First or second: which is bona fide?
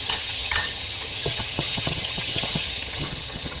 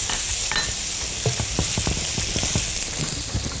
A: second